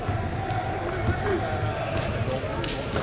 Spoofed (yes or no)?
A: no